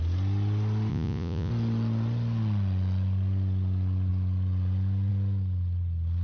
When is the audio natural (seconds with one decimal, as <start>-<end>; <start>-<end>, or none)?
0.0-0.9; 1.5-6.2